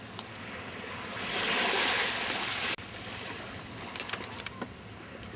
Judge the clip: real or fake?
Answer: real